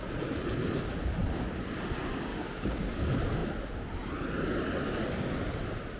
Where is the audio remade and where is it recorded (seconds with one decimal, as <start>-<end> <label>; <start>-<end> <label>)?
0.0-2.3 recorded; 2.3-3.0 remade; 3.0-6.0 recorded